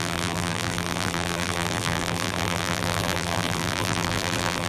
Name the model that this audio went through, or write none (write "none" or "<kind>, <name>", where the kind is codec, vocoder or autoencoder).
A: vocoder, BigVGAN v2